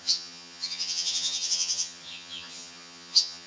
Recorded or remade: remade